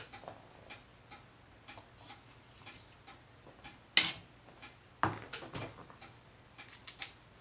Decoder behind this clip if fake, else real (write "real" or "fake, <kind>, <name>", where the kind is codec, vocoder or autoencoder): real